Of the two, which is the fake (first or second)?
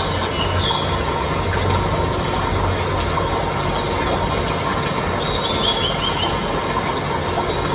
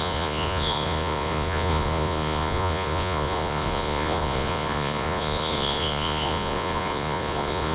second